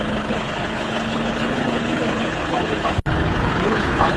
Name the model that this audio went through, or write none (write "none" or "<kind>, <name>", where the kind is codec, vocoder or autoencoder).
codec, HILCodec